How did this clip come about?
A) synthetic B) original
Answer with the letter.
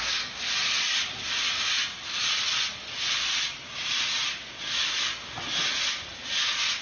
B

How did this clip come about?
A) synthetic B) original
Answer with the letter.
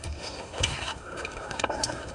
A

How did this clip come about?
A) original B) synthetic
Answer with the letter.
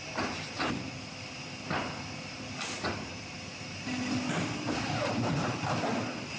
A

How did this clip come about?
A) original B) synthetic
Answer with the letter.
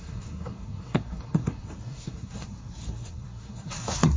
B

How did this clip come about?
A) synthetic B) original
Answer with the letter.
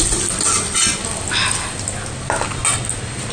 B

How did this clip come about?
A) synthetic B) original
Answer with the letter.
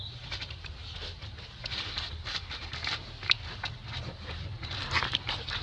B